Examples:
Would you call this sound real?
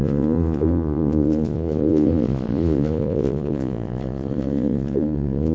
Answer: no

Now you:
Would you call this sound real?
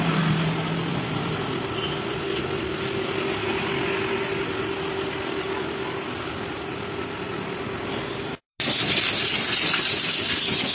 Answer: yes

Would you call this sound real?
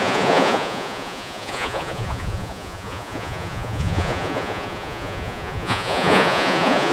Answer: no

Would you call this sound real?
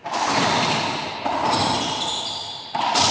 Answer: yes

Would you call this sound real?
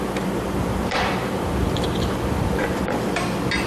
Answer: no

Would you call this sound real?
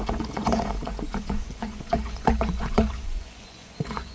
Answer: no